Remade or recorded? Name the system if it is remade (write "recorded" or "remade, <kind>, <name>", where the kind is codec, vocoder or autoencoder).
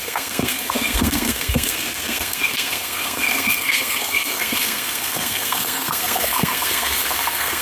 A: remade, codec, SNAC